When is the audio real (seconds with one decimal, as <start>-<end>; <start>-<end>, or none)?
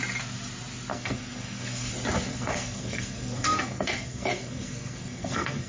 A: 0.0-0.9; 1.9-2.3